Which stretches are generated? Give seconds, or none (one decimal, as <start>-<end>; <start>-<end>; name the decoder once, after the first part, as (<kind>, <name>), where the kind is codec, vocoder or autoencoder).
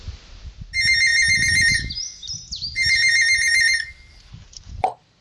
1.1-1.8 (vocoder, BigVGAN v2); 2.2-5.2